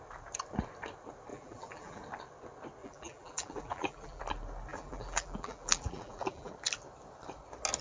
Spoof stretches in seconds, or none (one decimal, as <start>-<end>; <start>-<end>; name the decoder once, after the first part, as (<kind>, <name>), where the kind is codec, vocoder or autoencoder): 1.3-2.0 (vocoder, BigVGAN v2); 2.8-4.2; 4.7-6.5

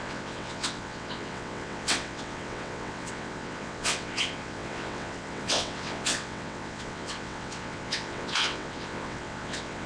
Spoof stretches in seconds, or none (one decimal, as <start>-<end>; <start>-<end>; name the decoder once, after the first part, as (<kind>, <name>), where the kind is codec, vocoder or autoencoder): 0.0-9.9 (vocoder, WaveNeXt)

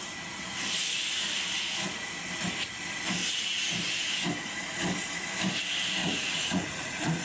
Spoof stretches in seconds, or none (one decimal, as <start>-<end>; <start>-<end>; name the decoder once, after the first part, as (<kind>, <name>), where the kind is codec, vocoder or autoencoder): 6.0-7.2 (vocoder, Vocos)

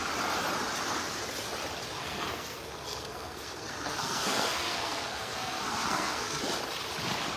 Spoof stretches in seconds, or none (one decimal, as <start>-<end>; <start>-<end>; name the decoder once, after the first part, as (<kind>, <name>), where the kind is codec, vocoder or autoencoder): 2.0-6.4 (codec, SNAC)

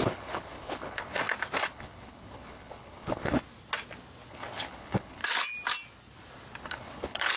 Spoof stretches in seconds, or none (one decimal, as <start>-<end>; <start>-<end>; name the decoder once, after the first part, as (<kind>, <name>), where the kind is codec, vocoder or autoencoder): 0.0-1.2 (codec, HILCodec); 1.7-3.4; 4.3-5.2; 6.6-7.4